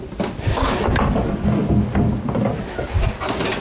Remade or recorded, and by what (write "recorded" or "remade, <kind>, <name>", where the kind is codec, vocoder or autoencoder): recorded